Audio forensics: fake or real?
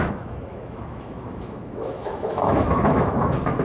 fake